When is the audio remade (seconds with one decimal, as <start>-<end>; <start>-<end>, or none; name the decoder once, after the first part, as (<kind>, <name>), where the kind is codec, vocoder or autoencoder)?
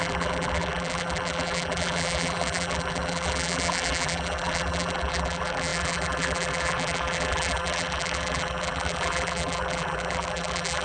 0.0-10.8 (vocoder, BigVGAN v2)